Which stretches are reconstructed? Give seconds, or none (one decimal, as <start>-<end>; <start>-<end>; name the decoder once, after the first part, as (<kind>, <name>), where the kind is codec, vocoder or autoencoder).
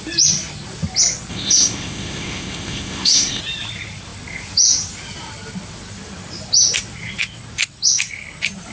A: 1.3-3.4 (codec, ZipCodec)